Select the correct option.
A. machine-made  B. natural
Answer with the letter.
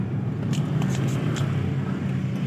B